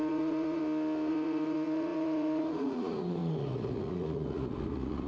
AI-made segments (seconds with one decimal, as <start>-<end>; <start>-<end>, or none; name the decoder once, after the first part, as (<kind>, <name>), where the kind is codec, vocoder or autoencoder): 0.0-0.6 (vocoder, Vocos); 1.1-5.1

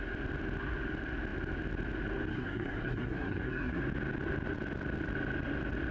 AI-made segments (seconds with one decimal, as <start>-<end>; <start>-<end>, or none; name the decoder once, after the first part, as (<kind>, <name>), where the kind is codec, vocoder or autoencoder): 2.3-3.8 (codec, SNAC)

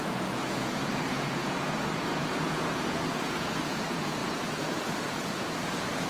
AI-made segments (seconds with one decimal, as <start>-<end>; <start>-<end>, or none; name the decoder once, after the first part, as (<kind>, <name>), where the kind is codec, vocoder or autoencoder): 0.0-6.1 (vocoder, Vocos)